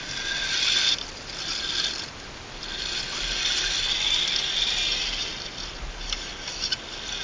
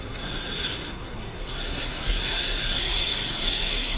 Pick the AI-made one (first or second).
second